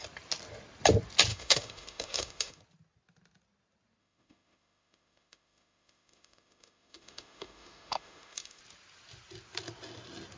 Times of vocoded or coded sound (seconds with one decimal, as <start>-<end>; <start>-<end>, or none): 1.3-2.6; 4.0-8.6